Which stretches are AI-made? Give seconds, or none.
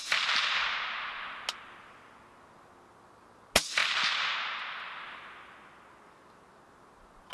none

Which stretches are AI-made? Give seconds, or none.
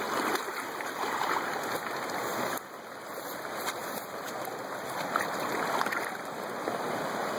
0.0-7.4 (vocoder, BigVGAN v2)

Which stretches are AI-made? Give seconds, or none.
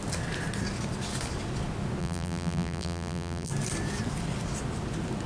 2.0-3.5 (vocoder, BigVGAN v2)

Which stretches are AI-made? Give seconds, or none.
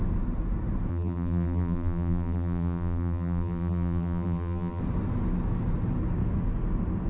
0.9-4.8 (vocoder, BigVGAN v2)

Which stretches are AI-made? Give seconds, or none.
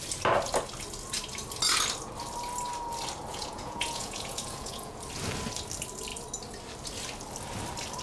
3.3-5.0 (vocoder, Vocos)